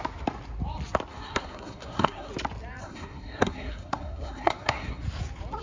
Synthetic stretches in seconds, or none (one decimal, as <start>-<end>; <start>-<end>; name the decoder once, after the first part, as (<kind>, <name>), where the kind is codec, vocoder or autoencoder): 1.1-2.3 (codec, SNAC); 2.8-5.0